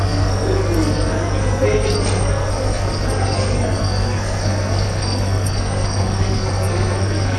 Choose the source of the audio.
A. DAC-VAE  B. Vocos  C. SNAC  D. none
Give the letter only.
C